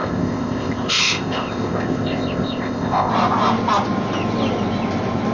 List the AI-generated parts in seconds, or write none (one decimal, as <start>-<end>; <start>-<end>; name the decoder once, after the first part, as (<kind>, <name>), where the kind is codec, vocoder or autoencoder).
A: 0.0-3.1 (codec, ZipCodec)